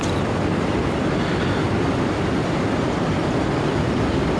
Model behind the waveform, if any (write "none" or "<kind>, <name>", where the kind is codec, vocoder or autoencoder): none